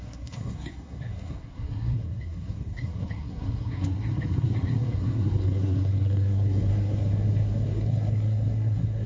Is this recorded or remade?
remade